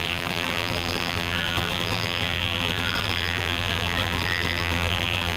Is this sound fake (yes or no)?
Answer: yes